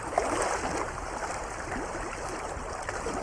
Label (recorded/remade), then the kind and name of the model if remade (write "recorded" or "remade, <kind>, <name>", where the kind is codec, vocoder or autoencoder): recorded